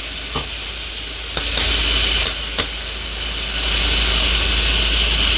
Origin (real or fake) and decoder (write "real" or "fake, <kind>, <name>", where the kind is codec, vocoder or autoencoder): real